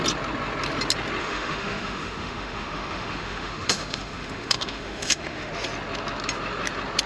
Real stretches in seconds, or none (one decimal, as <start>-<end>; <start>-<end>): 0.0-1.2; 5.5-7.1